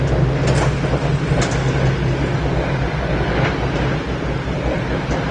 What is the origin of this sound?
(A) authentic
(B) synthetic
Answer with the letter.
A